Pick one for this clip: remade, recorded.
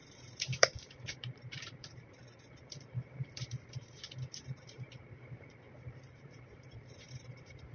remade